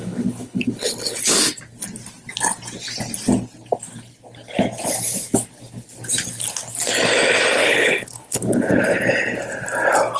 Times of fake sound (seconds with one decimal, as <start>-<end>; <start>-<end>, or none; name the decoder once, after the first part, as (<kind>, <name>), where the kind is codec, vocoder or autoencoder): 0.0-1.2 (codec, HILCodec); 7.6-8.7